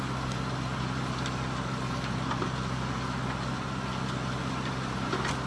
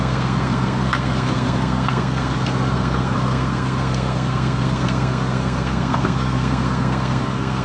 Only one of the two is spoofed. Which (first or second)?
second